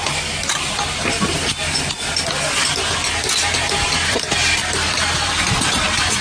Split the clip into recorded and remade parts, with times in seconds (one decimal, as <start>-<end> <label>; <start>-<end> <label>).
0.0-6.2 recorded

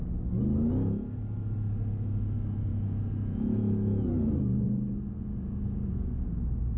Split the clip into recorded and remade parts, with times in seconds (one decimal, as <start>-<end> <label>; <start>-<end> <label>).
0.0-2.7 recorded; 2.7-6.8 remade

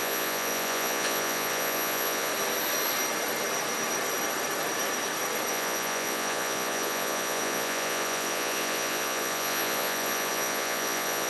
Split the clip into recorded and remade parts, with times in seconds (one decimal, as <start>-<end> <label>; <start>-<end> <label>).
0.0-2.3 remade; 2.3-5.5 recorded; 5.5-11.3 remade

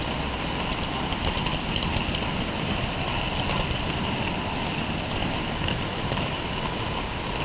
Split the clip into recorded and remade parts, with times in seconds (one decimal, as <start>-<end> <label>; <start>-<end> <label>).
0.0-7.4 recorded

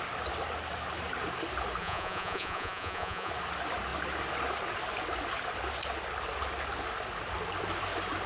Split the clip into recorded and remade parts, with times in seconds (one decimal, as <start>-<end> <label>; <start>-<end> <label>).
0.0-1.8 recorded; 1.8-3.3 remade; 3.3-8.3 recorded

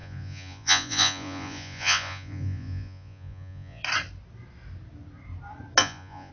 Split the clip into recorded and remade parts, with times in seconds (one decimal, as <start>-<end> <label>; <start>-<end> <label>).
0.0-3.8 remade; 3.8-5.8 recorded; 5.8-6.3 remade

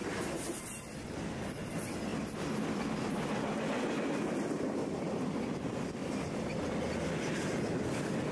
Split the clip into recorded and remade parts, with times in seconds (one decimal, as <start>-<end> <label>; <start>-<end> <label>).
0.0-8.3 recorded

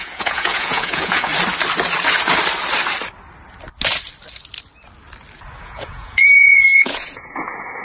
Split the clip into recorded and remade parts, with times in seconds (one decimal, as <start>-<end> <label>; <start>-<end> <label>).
0.0-1.3 remade; 1.3-5.6 recorded; 5.6-7.8 remade